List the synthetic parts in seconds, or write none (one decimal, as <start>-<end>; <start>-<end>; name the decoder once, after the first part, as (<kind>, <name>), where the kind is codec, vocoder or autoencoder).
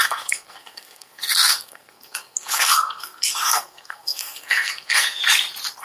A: 0.0-5.2 (codec, SNAC)